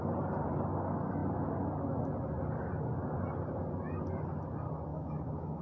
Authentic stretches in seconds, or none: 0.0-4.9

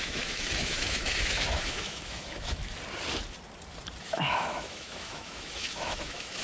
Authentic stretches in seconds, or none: 2.6-4.0

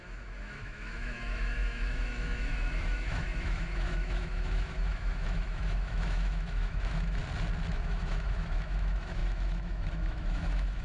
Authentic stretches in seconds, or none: 7.2-7.7

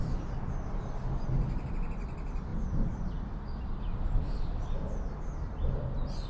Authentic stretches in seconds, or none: 0.0-6.3

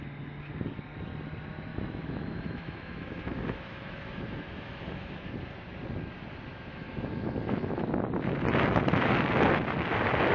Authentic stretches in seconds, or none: 0.0-1.7; 5.3-6.7; 7.3-10.3

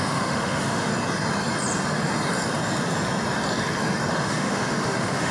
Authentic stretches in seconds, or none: 0.9-4.1

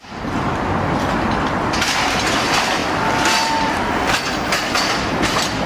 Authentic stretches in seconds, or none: 0.0-5.7